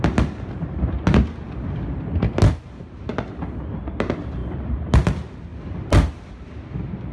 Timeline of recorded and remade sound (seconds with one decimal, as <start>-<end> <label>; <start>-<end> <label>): 0.0-4.4 recorded; 4.4-4.9 remade; 4.9-5.5 recorded; 5.5-6.2 remade; 6.2-7.1 recorded